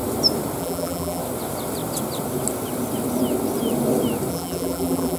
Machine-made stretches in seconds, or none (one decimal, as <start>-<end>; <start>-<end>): 0.6-1.2; 4.3-5.2

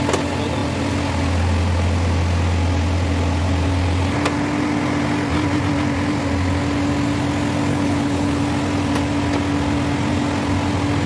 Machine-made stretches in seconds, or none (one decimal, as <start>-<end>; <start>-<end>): 7.7-8.4

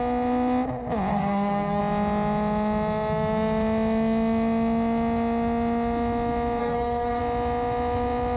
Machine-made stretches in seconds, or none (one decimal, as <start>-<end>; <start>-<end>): 1.1-1.8; 6.6-7.2

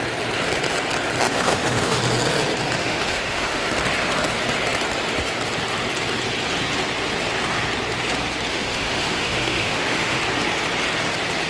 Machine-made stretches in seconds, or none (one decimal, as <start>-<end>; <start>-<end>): 1.3-2.0; 2.8-3.7; 8.5-10.2